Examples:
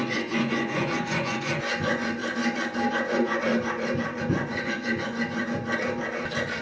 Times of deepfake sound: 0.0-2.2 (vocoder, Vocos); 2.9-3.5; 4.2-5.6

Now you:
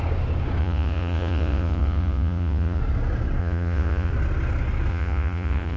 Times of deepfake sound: 0.6-2.8 (vocoder, Vocos); 3.4-4.1; 4.9-5.8